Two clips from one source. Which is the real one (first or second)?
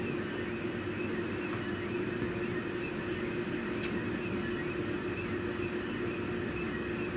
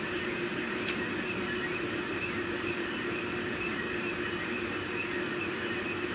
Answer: first